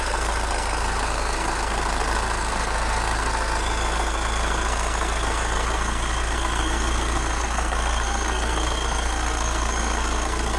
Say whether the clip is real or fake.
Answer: fake